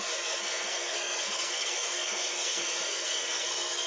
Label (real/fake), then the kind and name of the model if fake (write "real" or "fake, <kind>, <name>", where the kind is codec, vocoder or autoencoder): fake, codec, SNAC